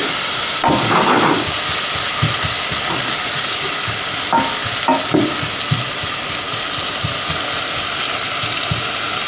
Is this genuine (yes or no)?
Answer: yes